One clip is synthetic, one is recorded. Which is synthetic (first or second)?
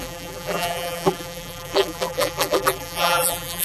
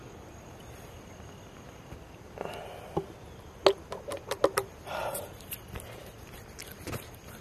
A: first